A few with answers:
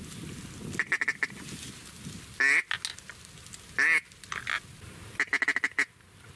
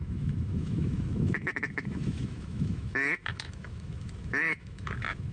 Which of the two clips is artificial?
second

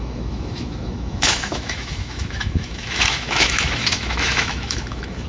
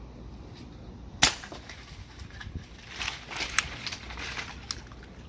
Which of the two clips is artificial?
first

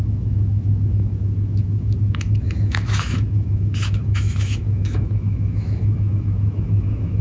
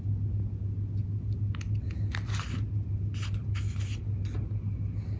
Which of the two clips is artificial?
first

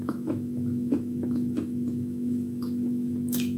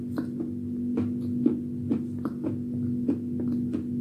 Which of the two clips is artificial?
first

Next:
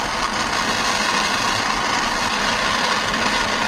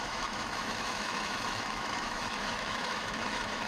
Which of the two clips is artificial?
second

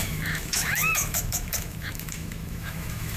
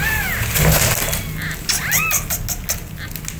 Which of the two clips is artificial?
first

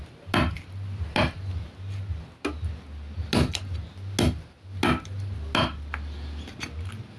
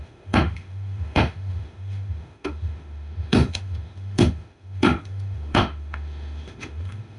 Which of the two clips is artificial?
second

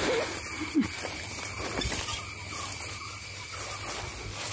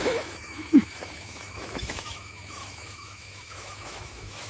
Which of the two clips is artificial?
second